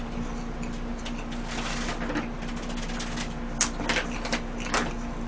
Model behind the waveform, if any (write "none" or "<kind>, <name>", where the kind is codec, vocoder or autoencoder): none